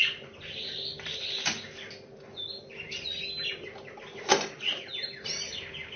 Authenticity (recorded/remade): recorded